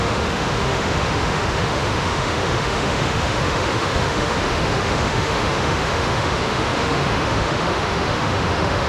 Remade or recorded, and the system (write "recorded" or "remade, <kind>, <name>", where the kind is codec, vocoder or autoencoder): remade, autoencoder, DAC-VAE